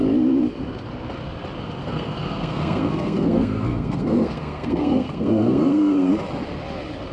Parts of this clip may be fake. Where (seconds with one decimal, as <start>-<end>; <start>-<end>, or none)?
1.8-6.1